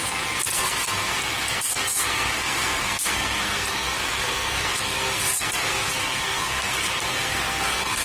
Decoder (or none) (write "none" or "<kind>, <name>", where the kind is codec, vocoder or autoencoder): codec, SNAC